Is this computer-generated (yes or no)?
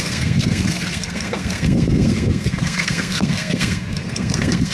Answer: yes